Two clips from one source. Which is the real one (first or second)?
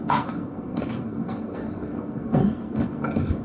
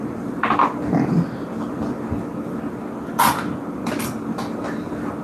second